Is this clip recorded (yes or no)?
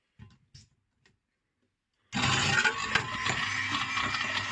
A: yes